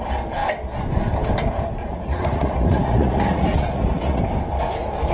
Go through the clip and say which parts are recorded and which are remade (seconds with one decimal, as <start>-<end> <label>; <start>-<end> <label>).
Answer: 0.0-1.8 recorded; 1.8-4.2 remade; 4.2-5.1 recorded